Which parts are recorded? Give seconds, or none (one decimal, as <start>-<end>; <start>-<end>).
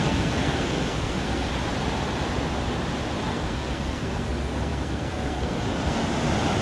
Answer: 1.5-3.2; 6.0-6.6